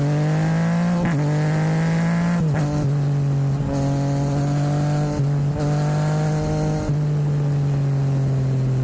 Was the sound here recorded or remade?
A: recorded